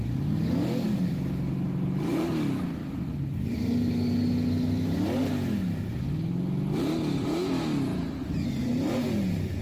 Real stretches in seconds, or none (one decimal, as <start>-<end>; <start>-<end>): 0.0-9.6

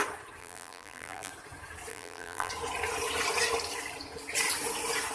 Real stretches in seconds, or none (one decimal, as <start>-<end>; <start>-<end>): 0.0-0.4; 1.3-1.9; 2.5-5.1

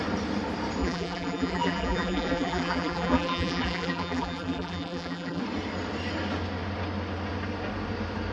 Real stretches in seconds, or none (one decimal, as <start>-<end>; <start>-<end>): 0.0-0.8; 5.4-8.3

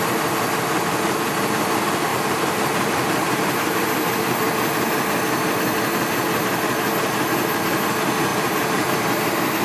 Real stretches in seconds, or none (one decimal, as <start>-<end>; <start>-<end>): 0.0-2.1; 3.9-8.3; 8.9-9.6

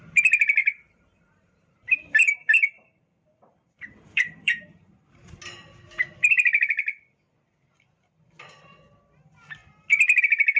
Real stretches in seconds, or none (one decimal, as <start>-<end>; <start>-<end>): 0.0-0.6; 5.4-10.6